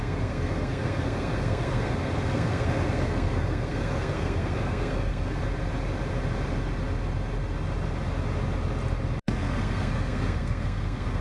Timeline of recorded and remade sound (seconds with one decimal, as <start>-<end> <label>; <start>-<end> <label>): 0.0-5.4 remade; 5.4-9.2 recorded; 9.2-11.2 remade